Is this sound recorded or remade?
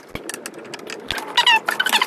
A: recorded